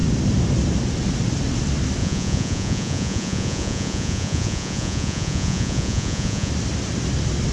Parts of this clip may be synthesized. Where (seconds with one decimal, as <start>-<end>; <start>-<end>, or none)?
2.0-6.5